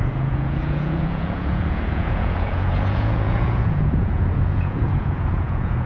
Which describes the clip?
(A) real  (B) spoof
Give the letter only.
B